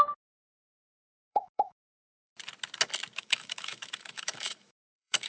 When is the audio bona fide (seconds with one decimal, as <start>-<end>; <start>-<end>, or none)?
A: 2.3-3.2